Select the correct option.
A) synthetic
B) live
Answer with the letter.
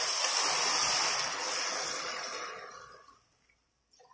B